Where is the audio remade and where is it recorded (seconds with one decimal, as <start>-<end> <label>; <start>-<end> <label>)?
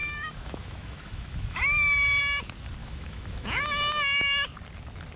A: 0.0-2.2 remade; 2.2-2.8 recorded; 2.8-3.6 remade; 3.6-5.2 recorded